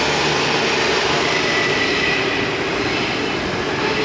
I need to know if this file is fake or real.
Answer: real